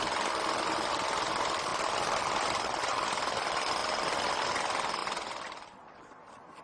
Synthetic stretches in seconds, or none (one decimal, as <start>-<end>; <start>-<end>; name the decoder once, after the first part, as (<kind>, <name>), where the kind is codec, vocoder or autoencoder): none